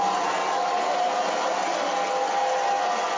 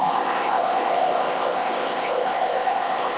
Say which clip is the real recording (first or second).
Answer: first